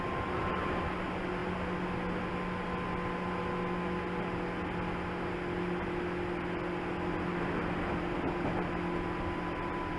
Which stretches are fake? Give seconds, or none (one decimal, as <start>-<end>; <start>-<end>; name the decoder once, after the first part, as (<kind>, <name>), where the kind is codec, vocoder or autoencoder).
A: none